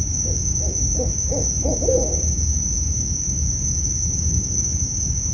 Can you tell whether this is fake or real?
fake